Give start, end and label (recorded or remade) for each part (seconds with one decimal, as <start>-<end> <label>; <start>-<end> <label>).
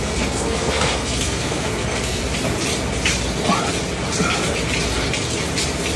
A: 0.0-2.2 remade; 2.2-6.0 recorded